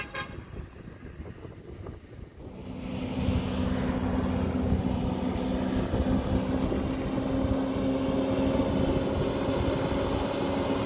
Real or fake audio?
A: real